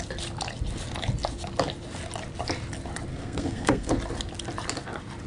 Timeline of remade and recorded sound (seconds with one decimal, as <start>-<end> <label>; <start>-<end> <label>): 0.0-3.1 recorded; 3.1-3.9 remade; 3.9-5.3 recorded